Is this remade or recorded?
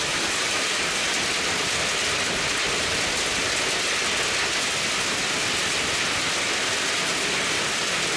recorded